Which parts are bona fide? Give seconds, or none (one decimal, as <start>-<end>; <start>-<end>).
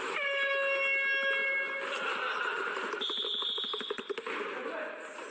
0.0-5.3